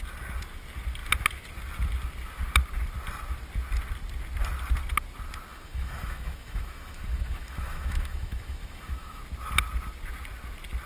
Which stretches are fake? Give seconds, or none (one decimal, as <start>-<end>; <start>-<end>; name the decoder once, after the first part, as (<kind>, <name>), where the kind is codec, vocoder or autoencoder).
5.5-9.2 (autoencoder, DAC-VAE)